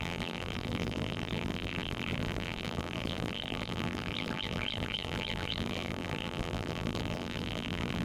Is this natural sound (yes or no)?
no